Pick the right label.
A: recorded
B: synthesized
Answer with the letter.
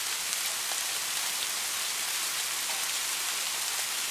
B